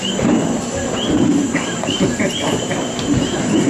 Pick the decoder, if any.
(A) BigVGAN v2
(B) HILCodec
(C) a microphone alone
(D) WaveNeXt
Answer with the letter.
A